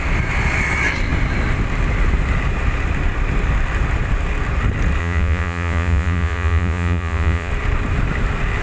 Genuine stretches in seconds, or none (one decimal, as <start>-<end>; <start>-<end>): 0.0-5.0; 7.5-8.6

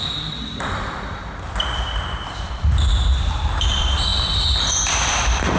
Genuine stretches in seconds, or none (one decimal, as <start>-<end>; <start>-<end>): 1.2-3.2

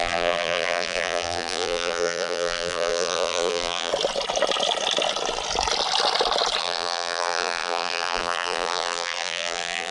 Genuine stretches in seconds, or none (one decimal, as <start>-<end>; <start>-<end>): 3.9-6.6

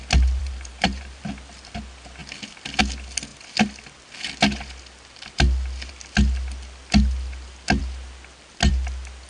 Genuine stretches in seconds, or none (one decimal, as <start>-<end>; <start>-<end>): 0.0-0.4; 1.2-9.3